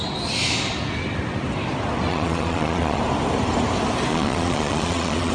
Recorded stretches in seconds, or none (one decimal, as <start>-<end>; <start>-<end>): 0.0-2.1; 3.0-4.1